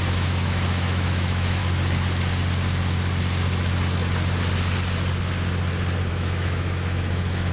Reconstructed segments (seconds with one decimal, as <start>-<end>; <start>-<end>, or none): 0.0-1.6; 6.1-7.5